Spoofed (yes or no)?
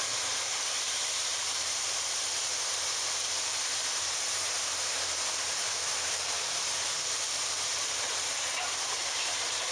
yes